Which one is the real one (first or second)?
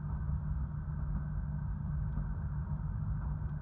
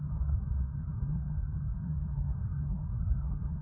first